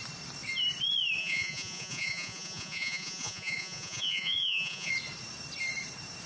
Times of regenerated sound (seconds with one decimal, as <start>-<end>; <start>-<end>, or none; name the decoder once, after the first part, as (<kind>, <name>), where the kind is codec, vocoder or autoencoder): 1.2-4.9 (vocoder, Vocos)